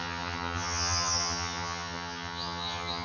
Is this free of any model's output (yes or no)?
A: no